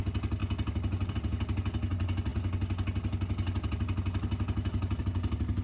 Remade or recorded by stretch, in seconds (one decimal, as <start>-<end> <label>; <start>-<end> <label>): 0.0-5.6 recorded